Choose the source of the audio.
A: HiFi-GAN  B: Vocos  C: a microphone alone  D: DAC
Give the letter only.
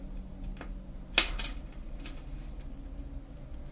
C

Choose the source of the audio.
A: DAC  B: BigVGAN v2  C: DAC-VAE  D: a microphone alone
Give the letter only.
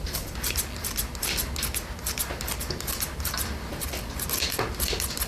D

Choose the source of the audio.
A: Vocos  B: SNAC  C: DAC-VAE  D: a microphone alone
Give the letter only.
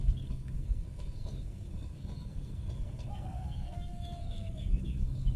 B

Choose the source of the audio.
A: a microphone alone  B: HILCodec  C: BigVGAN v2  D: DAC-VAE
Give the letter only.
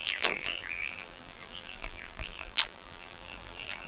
C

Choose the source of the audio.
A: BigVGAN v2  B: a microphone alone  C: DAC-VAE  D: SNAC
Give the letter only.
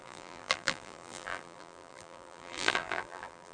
A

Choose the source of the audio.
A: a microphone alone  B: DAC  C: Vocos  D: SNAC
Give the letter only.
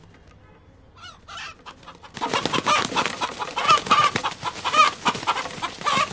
A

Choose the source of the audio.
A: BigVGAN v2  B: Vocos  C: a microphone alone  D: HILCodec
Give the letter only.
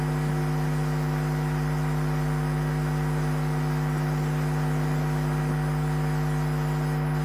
C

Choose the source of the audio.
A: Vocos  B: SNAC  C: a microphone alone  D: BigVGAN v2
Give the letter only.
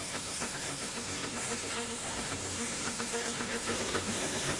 B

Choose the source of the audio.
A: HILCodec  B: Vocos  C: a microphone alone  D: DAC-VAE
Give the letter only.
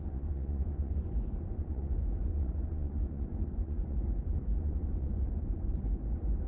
B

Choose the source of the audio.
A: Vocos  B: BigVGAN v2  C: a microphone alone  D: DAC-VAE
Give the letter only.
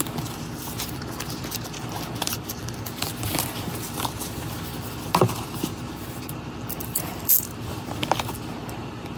B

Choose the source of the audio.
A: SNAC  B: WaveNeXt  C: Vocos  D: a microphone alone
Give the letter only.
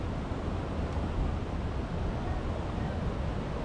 D